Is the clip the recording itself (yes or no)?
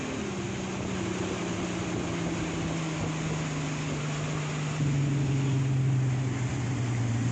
yes